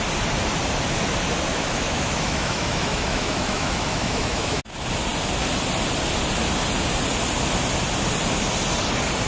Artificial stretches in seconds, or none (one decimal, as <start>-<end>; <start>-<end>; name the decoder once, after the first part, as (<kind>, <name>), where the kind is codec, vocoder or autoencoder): 1.5-4.6 (autoencoder, DAC-VAE)